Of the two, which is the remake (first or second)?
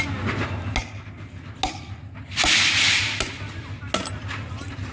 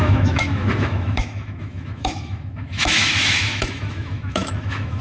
second